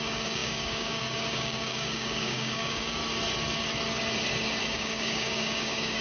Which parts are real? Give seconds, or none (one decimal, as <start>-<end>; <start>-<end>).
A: 3.0-4.6